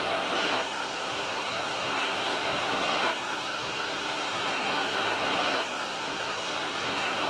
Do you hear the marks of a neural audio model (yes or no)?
yes